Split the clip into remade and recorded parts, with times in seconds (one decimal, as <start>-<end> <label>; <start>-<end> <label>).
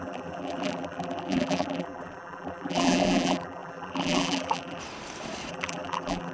0.0-4.8 remade; 4.8-5.5 recorded; 5.5-6.3 remade